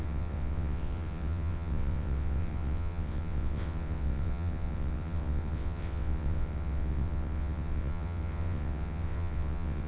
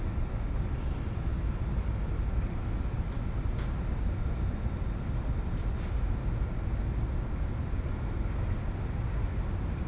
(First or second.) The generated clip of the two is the first